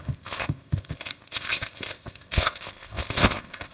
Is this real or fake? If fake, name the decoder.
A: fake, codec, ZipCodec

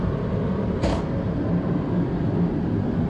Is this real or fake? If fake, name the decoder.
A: fake, vocoder, BigVGAN v2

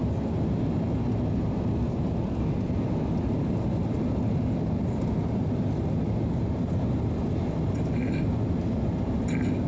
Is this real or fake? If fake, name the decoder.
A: real